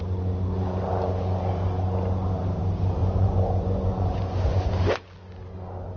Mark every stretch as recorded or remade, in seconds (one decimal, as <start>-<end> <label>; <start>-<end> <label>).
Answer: 0.0-3.0 recorded; 3.0-4.7 remade; 4.7-6.0 recorded

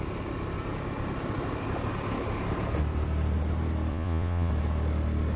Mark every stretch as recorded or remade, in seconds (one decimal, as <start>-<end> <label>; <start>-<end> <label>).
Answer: 0.0-3.9 recorded; 3.9-4.5 remade; 4.5-5.4 recorded

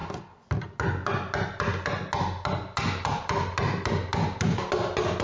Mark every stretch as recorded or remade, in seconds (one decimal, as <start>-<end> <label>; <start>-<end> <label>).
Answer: 0.0-5.2 recorded